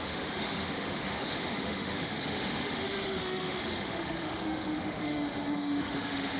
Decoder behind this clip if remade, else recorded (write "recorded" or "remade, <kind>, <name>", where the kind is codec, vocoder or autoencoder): remade, autoencoder, DAC-VAE